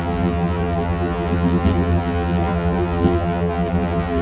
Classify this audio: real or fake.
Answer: fake